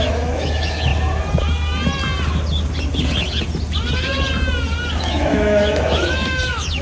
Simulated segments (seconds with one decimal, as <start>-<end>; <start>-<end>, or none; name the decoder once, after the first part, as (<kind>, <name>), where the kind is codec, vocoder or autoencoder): 0.0-0.9 (autoencoder, DAC-VAE); 5.0-6.8

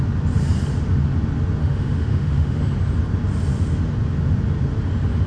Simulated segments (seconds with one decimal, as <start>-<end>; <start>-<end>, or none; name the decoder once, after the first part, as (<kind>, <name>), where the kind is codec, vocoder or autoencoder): 1.6-2.6 (autoencoder, DAC-VAE)

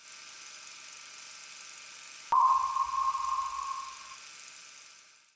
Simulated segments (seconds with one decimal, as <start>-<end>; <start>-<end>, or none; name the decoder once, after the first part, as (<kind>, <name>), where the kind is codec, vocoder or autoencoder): none